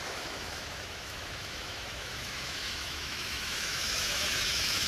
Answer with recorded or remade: remade